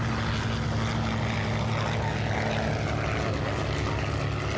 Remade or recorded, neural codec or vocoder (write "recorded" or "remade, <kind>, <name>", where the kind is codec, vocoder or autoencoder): recorded